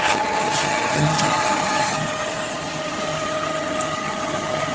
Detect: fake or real fake